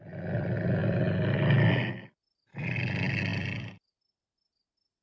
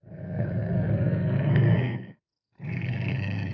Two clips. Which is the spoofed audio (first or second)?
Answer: second